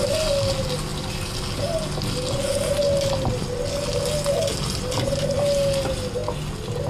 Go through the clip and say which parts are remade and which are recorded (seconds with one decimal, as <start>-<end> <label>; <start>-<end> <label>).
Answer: 0.0-6.9 recorded

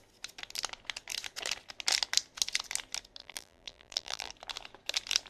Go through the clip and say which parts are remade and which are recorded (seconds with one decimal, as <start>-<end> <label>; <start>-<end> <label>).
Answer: 0.0-3.2 recorded; 3.2-4.3 remade; 4.3-5.3 recorded

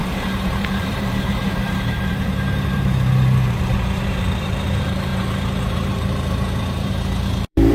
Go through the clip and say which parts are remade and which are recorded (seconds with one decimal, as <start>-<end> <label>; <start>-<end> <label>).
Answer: 0.0-7.7 remade